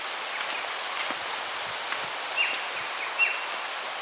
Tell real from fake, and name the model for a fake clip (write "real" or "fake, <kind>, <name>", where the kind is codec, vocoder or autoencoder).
real